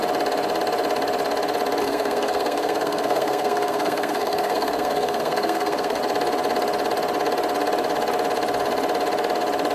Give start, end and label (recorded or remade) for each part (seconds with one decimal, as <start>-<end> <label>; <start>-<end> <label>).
0.0-1.8 recorded; 1.8-6.0 remade; 6.0-9.7 recorded